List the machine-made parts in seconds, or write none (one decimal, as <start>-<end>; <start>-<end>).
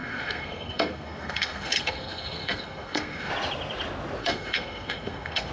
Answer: 0.0-3.3; 4.2-5.5